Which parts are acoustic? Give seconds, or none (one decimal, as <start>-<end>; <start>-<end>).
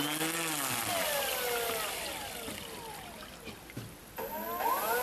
0.0-5.0